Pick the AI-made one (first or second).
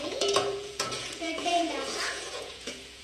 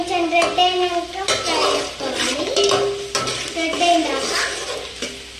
first